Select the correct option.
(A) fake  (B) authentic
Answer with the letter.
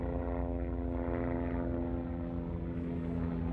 B